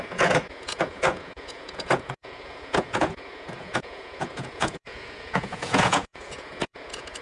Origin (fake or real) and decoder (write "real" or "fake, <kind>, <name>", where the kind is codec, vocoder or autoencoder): fake, vocoder, Vocos